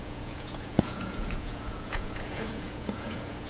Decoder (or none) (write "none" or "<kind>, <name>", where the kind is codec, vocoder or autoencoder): vocoder, Vocos